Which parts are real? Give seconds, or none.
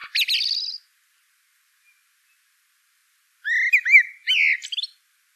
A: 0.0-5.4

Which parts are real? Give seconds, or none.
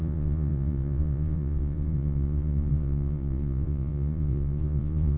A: none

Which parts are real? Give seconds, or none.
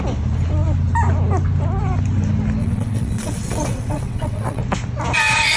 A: 0.0-2.6; 4.6-5.6